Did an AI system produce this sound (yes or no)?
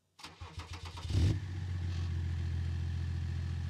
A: no